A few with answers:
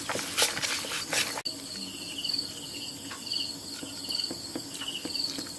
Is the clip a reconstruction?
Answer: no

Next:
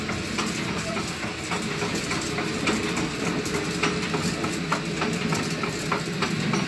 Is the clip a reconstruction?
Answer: no